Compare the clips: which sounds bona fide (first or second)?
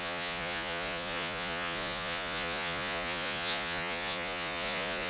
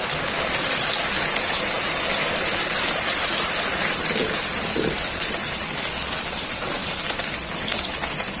second